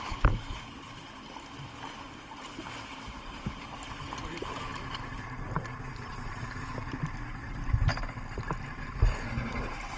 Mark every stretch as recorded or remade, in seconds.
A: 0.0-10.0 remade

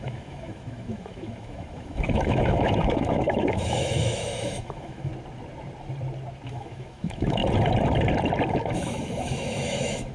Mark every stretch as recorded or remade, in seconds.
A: 0.0-5.1 remade; 5.1-6.5 recorded; 6.5-7.4 remade; 7.4-8.5 recorded; 8.5-10.1 remade

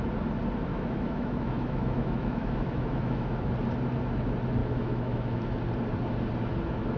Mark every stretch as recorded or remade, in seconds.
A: 0.0-0.7 recorded; 0.7-3.5 remade; 3.5-4.6 recorded; 4.6-5.6 remade; 5.6-7.0 recorded

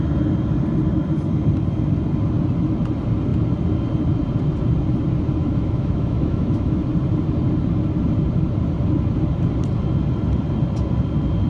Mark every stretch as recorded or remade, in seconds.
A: 0.0-5.4 recorded; 5.4-6.8 remade; 6.8-11.5 recorded

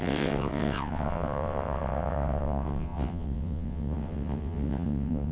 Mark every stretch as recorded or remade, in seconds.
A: 0.0-5.3 remade